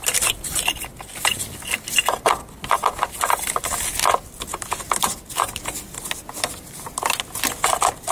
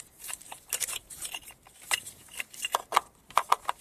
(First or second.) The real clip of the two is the first